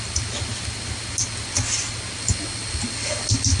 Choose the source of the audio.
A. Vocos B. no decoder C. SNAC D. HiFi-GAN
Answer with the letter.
B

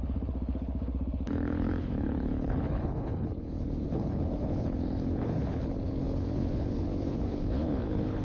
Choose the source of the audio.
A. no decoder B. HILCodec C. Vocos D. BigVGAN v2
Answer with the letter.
B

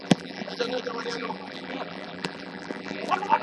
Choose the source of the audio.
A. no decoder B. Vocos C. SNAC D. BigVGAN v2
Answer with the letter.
D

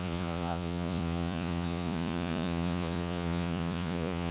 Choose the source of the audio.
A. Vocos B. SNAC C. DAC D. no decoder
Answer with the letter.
A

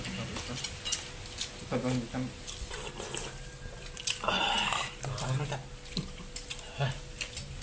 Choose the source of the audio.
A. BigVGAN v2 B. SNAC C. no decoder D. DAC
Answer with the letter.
C